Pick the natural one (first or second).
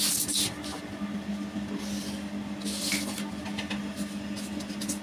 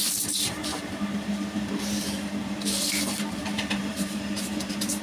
first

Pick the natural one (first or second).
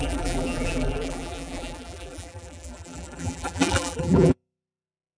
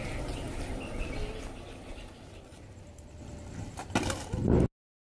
second